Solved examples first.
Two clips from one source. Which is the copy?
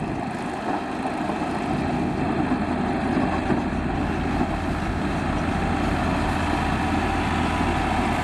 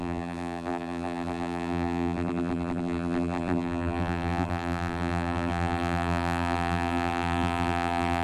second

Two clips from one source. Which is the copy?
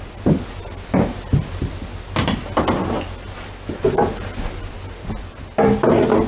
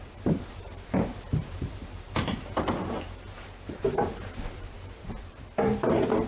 second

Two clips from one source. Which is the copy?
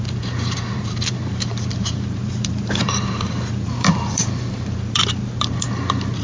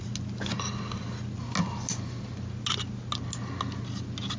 first